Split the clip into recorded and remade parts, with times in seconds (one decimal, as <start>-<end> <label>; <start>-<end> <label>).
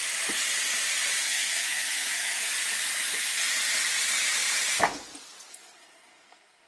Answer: 0.0-1.2 recorded; 1.2-2.5 remade; 2.5-5.5 recorded; 5.5-6.7 remade